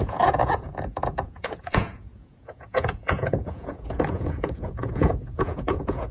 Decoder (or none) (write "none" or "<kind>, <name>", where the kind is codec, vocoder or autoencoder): vocoder, Vocos